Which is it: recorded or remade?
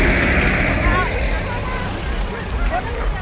recorded